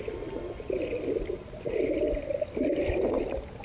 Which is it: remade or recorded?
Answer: recorded